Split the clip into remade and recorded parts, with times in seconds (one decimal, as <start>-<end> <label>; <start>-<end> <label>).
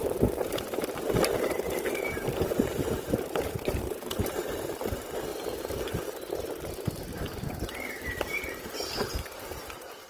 0.0-5.3 remade; 5.3-7.0 recorded; 7.0-10.1 remade